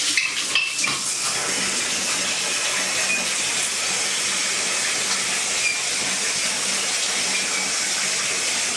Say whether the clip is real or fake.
real